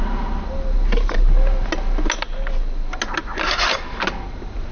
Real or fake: real